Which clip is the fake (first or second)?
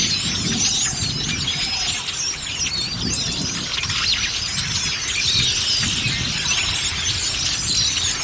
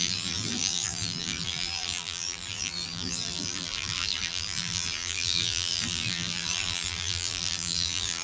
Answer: second